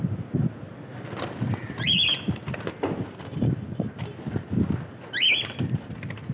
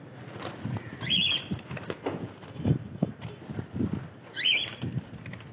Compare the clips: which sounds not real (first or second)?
second